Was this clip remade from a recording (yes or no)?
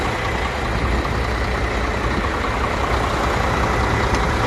no